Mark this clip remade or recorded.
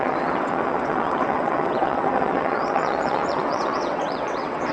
remade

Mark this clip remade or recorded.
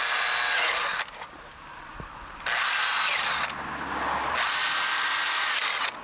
recorded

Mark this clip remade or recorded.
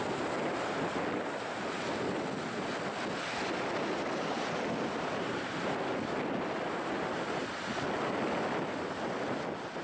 recorded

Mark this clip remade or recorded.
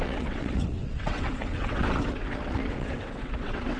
remade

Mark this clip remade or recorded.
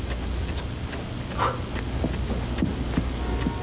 recorded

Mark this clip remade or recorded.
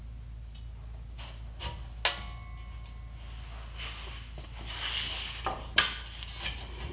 recorded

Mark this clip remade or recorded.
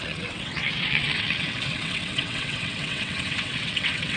remade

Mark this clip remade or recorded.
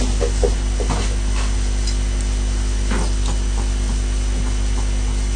recorded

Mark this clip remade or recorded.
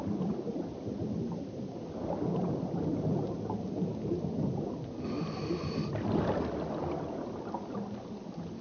recorded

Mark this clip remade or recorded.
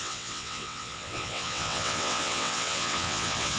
remade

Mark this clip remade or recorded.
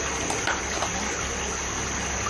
recorded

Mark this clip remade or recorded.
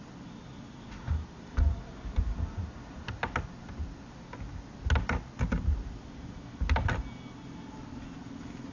recorded